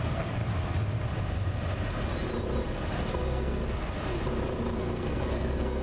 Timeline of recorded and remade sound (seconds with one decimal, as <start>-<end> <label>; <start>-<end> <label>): 0.0-0.4 remade; 0.4-3.1 recorded; 3.1-3.6 remade; 3.6-4.8 recorded; 4.8-5.8 remade